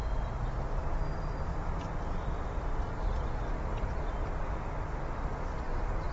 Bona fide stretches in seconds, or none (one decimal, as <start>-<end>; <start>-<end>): 0.0-6.1